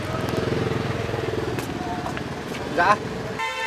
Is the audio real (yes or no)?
yes